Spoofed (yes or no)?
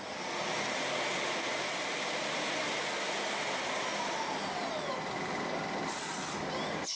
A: no